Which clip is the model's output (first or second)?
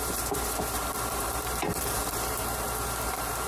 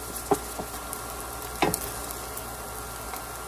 first